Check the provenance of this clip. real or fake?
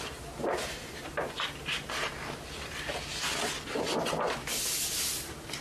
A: real